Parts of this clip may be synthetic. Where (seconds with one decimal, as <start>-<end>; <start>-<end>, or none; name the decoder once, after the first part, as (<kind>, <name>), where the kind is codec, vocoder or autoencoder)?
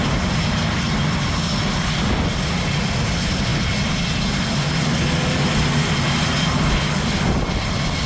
none